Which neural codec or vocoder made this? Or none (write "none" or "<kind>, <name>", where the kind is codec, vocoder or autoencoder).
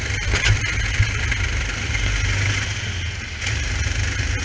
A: none